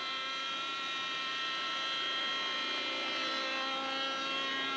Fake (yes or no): no